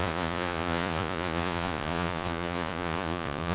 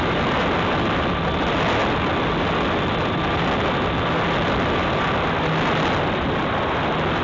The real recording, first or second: second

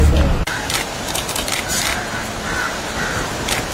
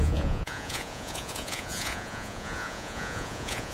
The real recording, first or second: first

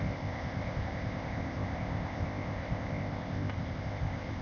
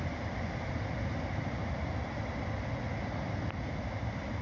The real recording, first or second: second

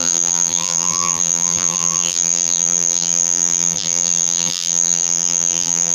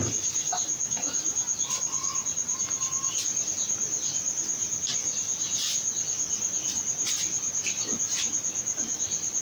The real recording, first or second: second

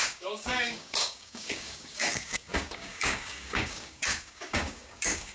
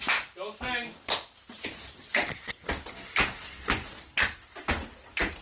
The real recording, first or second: second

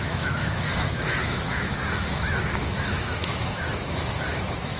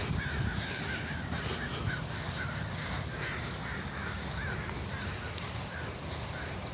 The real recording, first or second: second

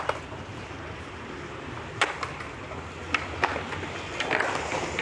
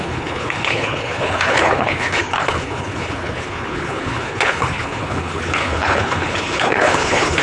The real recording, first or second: first